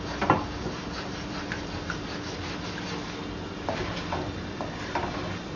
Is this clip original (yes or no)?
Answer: yes